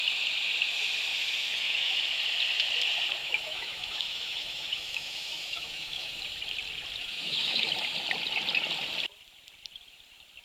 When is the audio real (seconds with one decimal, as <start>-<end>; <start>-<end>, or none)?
0.0-1.1; 2.0-3.2; 6.2-7.0; 7.7-10.4